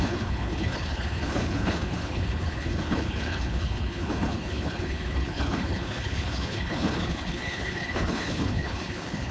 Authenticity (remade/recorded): remade